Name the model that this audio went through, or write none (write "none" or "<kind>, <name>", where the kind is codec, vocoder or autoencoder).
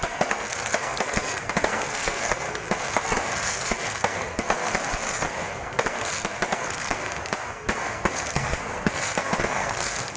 codec, SNAC